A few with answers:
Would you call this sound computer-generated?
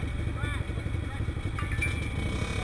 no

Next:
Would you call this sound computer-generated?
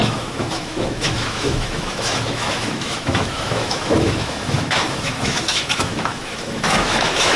yes